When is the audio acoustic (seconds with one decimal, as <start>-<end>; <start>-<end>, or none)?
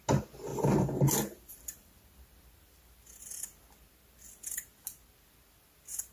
0.0-6.1